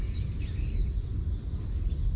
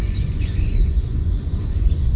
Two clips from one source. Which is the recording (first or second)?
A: first